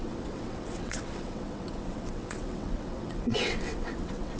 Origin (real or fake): fake